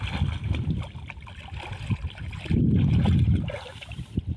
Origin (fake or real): real